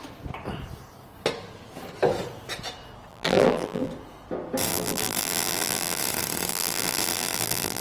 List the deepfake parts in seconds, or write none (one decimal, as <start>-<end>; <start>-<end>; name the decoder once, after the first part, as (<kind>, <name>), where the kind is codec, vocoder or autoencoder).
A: 3.1-3.9 (vocoder, BigVGAN v2); 4.7-6.0; 6.5-7.8